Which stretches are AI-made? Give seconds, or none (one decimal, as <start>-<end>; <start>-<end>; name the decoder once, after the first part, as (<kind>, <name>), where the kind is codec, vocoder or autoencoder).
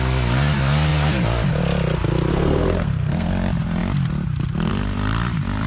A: 2.3-3.3 (codec, SNAC)